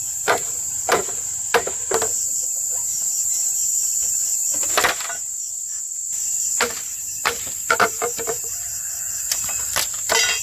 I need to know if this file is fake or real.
fake